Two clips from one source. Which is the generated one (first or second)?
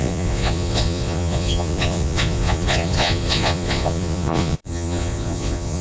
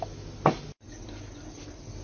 first